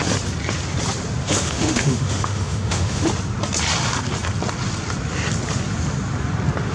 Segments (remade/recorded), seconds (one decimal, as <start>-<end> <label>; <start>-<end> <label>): 0.0-1.2 recorded; 1.2-3.1 remade; 3.1-6.7 recorded